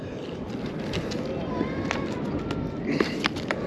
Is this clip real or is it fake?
real